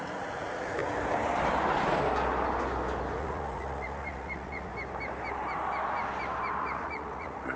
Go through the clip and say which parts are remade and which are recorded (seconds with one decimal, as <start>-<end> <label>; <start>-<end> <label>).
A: 0.0-0.8 remade; 0.8-3.2 recorded; 3.2-4.7 remade; 4.7-6.6 recorded; 6.6-7.6 remade

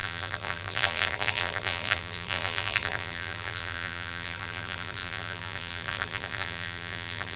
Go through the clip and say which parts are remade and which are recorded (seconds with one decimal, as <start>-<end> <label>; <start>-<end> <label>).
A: 0.0-7.4 remade